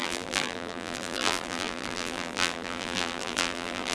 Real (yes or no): no